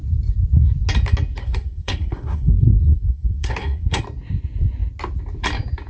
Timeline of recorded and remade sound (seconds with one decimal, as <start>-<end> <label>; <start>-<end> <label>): 0.0-1.4 recorded; 1.4-4.0 remade; 4.0-5.9 recorded